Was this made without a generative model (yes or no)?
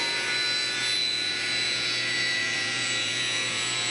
no